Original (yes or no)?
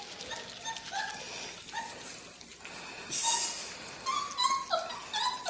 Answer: yes